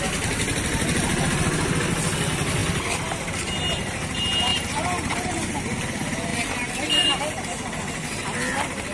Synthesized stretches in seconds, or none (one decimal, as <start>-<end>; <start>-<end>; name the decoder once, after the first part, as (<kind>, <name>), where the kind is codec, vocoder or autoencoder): 4.5-5.6 (vocoder, BigVGAN v2); 6.3-7.2